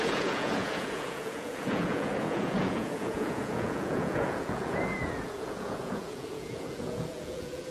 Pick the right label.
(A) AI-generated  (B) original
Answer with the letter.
A